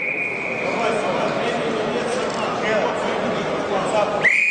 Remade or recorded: recorded